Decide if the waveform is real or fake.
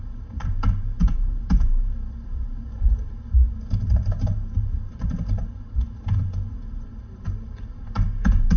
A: fake